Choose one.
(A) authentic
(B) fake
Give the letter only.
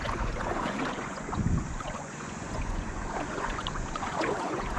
B